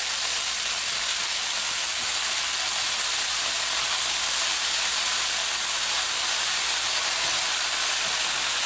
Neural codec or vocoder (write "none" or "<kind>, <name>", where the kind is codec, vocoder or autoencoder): none